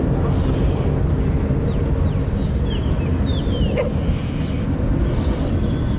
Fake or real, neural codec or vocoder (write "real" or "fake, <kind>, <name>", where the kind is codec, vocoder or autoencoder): real